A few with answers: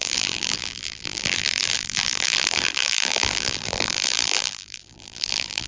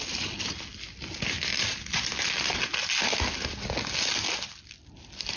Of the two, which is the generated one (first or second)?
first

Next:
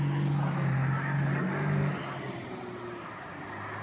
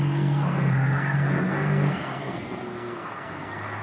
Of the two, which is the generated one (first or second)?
second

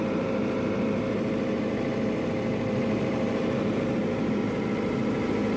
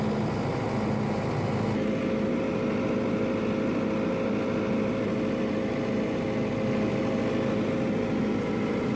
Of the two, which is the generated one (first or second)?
first